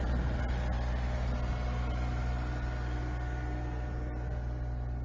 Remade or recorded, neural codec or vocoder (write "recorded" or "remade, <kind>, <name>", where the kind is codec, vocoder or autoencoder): recorded